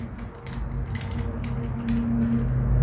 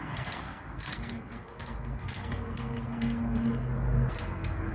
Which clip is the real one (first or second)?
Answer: first